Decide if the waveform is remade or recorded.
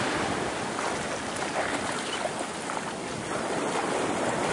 recorded